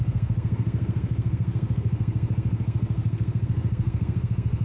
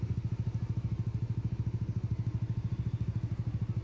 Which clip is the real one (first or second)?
second